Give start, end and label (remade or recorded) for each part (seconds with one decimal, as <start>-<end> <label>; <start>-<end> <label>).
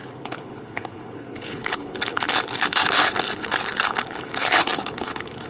0.0-5.5 remade